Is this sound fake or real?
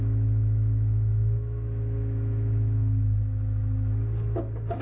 fake